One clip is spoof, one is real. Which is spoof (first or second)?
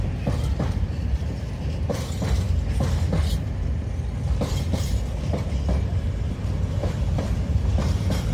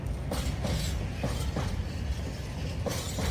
first